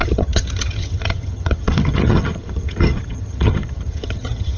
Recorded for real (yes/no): no